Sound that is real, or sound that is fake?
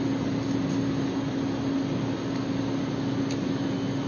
real